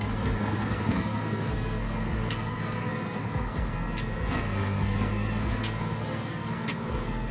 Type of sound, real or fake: fake